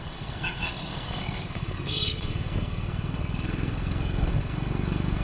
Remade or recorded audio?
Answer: remade